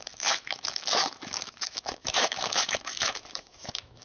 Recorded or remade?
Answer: remade